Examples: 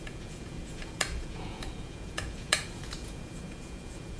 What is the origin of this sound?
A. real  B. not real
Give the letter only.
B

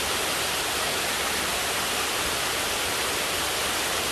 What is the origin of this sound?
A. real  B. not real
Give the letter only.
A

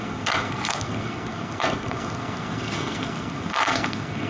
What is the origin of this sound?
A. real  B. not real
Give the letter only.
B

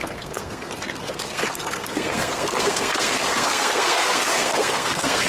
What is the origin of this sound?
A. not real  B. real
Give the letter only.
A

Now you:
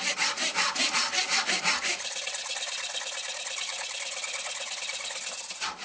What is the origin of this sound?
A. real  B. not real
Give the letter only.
A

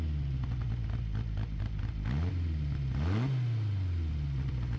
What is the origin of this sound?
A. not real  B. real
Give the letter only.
B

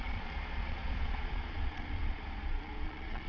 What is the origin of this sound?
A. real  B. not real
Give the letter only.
B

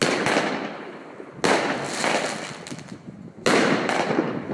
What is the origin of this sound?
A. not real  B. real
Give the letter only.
B